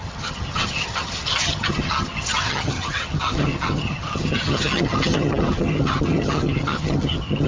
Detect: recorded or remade remade